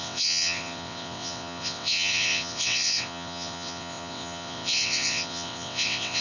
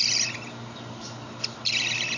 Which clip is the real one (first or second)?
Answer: second